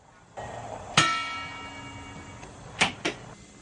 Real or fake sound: real